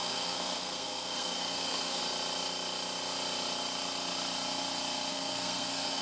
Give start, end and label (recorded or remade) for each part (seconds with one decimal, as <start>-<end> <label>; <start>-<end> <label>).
0.0-2.0 remade; 2.0-5.1 recorded; 5.1-6.0 remade